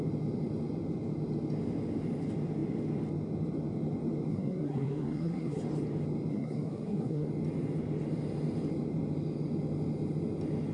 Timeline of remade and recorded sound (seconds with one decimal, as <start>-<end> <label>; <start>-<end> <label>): 0.0-4.3 recorded; 4.3-5.6 remade; 5.6-6.3 recorded; 6.3-7.3 remade; 7.3-10.7 recorded